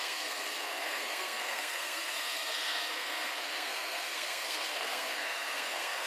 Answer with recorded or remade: remade